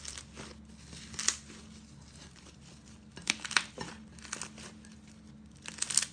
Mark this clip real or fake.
real